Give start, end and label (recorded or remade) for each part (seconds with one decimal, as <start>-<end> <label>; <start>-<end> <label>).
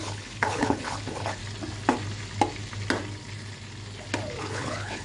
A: 0.0-1.4 remade; 1.4-4.4 recorded; 4.4-5.0 remade